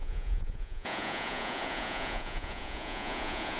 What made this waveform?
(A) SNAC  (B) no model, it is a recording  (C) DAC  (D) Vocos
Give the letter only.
D